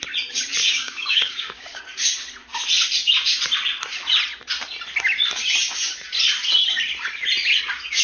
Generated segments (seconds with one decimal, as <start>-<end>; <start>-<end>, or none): 0.6-1.8